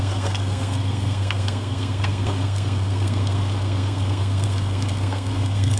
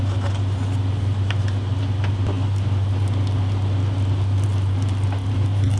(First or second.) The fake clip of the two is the first